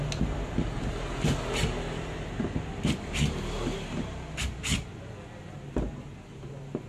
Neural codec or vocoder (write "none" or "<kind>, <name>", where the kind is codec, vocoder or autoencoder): none